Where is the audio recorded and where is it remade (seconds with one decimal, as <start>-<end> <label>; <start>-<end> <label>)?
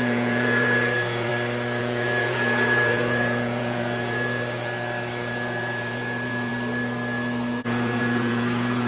0.0-1.3 remade; 1.3-1.8 recorded; 1.8-4.4 remade; 4.4-5.3 recorded; 5.3-6.5 remade; 6.5-7.6 recorded; 7.6-8.9 remade